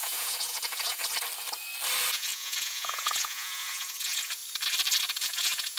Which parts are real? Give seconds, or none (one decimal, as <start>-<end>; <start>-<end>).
1.0-2.1; 4.4-5.0